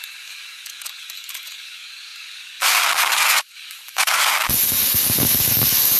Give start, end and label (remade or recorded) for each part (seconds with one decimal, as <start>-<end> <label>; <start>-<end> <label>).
0.0-6.0 remade